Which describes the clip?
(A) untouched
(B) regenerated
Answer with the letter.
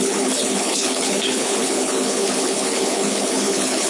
B